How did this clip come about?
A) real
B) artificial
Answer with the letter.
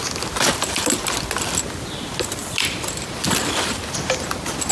A